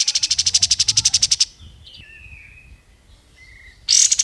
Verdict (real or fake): real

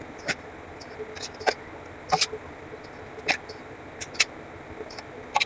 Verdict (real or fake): real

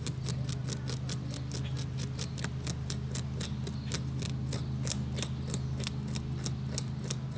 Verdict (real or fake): real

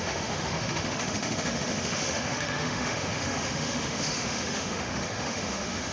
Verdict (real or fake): fake